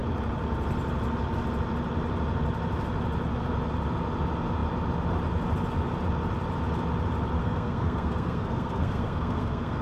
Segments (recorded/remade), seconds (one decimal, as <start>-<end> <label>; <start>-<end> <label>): 0.0-7.4 recorded; 7.4-9.8 remade